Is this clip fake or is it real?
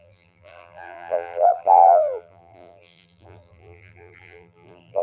fake